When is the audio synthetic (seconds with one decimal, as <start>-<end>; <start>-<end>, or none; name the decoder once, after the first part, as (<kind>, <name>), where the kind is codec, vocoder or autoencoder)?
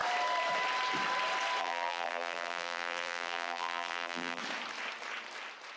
1.6-4.4 (vocoder, BigVGAN v2)